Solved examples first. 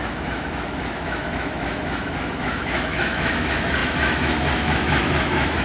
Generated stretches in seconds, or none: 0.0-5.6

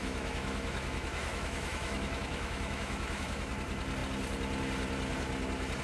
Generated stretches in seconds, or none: 0.0-3.5

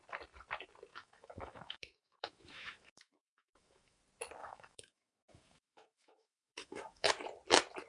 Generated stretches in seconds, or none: 0.9-4.0; 4.4-7.1

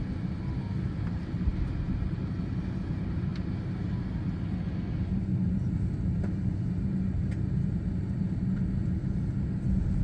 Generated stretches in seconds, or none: none